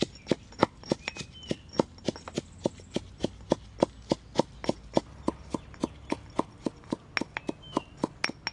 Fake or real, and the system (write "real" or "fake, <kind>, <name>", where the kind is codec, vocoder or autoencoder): real